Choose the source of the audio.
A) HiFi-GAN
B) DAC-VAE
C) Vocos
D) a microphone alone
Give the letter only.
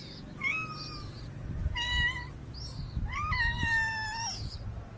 D